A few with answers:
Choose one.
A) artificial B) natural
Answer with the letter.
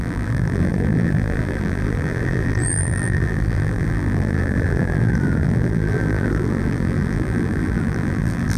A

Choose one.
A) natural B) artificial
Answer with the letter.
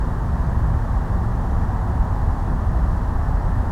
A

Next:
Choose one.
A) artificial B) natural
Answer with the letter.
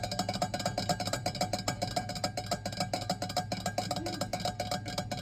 B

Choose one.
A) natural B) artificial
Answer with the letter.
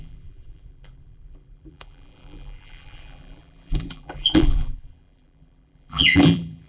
B